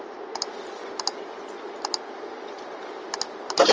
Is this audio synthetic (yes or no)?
no